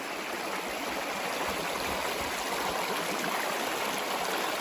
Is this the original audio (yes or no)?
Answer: yes